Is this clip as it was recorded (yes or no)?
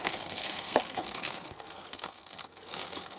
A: no